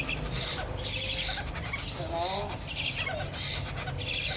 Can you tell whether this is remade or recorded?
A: recorded